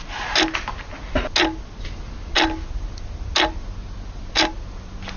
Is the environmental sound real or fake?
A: real